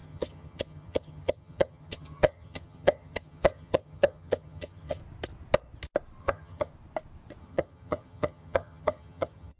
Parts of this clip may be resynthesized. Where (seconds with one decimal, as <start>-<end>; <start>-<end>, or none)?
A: 0.0-5.0; 6.2-6.7; 7.4-9.6

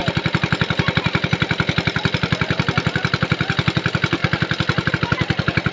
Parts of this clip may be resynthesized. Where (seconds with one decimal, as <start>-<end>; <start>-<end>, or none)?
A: none

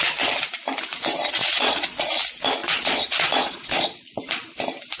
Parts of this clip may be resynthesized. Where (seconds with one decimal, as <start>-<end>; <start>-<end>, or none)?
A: 1.4-2.0; 2.6-4.2

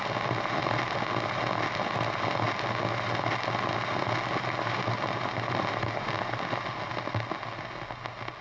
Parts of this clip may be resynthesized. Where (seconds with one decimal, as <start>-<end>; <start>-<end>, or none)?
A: none

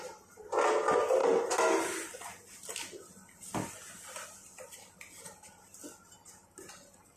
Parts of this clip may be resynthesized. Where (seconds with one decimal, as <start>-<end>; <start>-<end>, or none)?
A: none

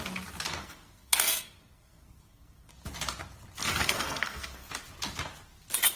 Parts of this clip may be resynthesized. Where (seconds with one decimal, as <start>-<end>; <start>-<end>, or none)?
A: 0.6-2.7; 3.6-4.7